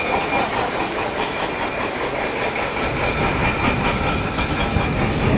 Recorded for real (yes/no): yes